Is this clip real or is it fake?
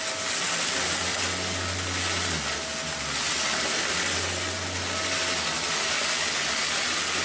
real